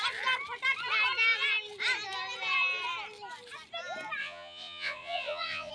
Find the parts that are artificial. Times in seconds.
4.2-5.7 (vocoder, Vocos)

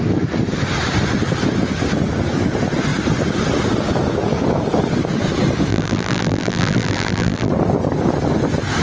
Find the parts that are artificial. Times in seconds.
5.7-7.5 (vocoder, BigVGAN v2)

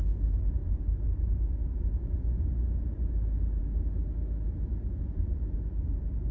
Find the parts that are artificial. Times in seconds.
0.6-1.9 (vocoder, BigVGAN v2)

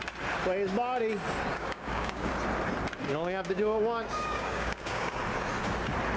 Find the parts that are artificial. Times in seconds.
1.5-2.3 (codec, DAC); 3.1-5.2

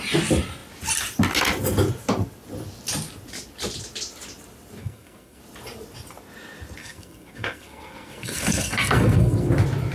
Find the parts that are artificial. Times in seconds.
4.8-5.4 (codec, SNAC); 6.8-9.5